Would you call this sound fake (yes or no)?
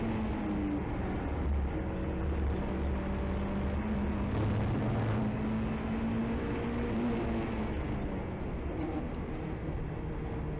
no